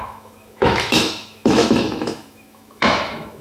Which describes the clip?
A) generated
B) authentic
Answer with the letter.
A